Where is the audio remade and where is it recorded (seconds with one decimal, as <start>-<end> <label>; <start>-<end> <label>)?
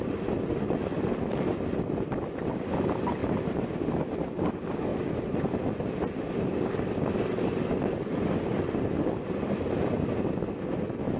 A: 0.0-11.2 recorded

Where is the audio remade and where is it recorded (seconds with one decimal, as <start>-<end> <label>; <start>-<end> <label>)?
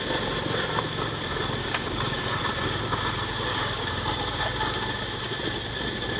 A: 0.0-1.6 recorded; 1.6-2.4 remade; 2.4-3.5 recorded; 3.5-4.4 remade; 4.4-6.2 recorded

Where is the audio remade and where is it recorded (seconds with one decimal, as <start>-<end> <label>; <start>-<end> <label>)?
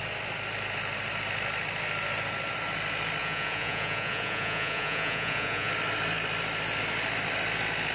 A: 0.0-3.2 recorded; 3.2-5.7 remade; 5.7-7.9 recorded